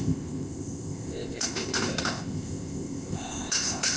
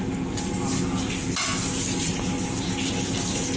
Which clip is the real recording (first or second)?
second